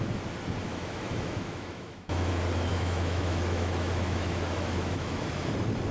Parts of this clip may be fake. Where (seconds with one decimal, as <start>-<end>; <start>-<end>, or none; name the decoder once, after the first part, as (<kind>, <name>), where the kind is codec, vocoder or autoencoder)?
0.7-2.3 (autoencoder, DAC-VAE); 2.7-5.2